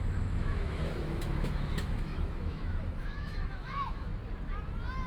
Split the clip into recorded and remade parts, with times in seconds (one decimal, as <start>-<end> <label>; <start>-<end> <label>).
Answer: 0.0-4.1 remade; 4.1-5.1 recorded